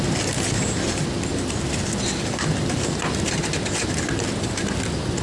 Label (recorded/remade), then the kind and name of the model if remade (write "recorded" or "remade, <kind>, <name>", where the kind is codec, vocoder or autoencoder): recorded